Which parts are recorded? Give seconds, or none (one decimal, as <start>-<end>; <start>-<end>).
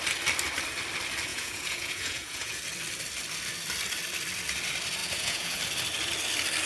0.0-1.3; 2.6-5.0; 5.6-6.7